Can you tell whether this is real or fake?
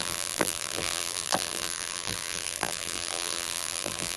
fake